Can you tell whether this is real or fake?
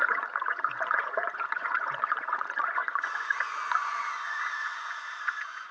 fake